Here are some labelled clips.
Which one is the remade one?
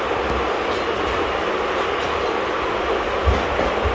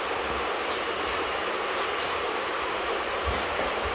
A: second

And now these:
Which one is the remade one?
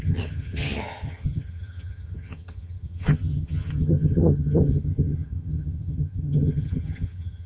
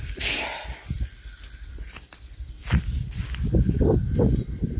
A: first